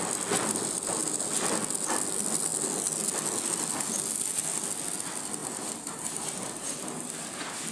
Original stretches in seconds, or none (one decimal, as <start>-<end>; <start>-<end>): 0.0-5.4; 7.1-7.7